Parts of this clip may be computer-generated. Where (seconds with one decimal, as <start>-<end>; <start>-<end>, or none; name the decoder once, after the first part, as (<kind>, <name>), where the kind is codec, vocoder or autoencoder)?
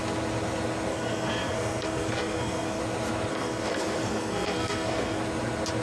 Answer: 0.9-2.8 (codec, SNAC); 3.3-5.2